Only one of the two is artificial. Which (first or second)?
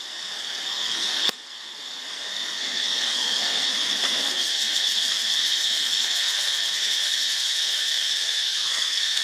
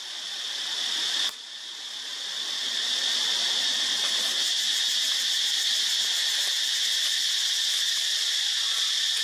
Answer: first